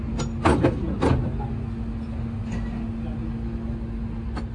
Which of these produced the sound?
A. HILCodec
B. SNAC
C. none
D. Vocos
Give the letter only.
C